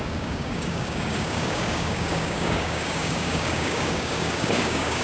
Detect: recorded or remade remade